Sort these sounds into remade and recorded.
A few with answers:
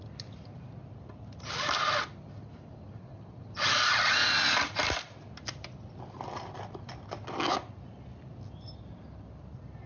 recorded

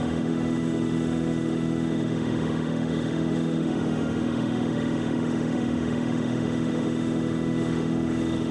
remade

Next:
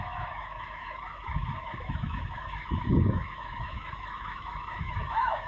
remade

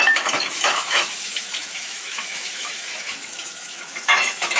remade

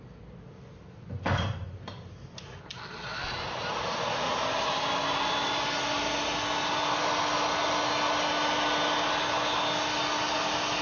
recorded